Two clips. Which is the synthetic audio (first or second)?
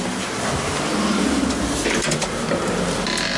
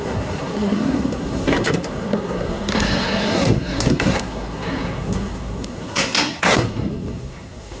second